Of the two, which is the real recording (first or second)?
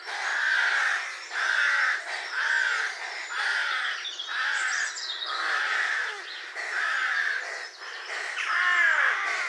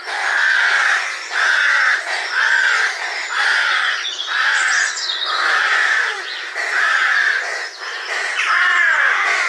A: first